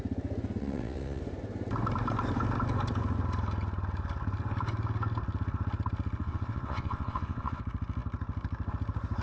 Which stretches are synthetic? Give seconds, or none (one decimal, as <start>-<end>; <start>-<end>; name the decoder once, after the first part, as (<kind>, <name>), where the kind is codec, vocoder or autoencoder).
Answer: 0.6-1.2 (vocoder, WaveNeXt); 6.2-7.6